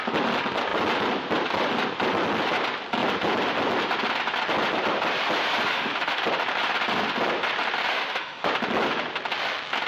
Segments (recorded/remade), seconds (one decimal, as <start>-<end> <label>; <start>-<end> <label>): 0.0-5.7 recorded; 5.7-6.2 remade; 6.2-7.9 recorded; 7.9-8.5 remade; 8.5-9.9 recorded